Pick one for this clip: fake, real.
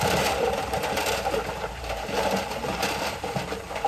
fake